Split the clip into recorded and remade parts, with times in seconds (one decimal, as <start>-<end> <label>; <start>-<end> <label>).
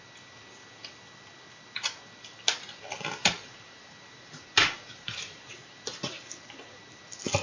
0.0-3.2 recorded; 3.2-6.8 remade; 6.8-7.4 recorded